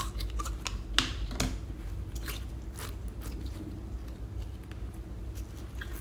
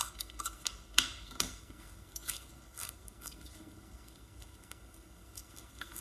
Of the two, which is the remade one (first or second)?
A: second